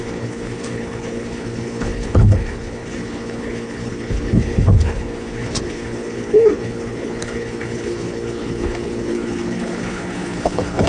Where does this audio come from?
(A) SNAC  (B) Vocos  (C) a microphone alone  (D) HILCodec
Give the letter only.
D